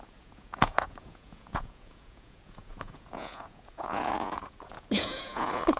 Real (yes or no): no